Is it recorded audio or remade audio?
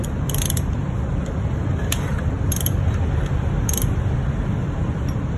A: remade